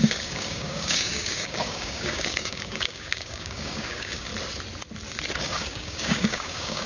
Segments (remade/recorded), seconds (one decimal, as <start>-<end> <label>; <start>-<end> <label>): 0.0-4.3 remade; 4.3-5.4 recorded; 5.4-6.9 remade